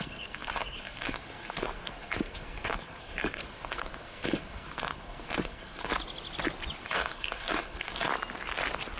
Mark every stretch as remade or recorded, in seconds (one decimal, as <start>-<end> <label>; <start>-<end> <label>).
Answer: 0.0-5.9 remade; 5.9-6.8 recorded; 6.8-8.1 remade; 8.1-9.0 recorded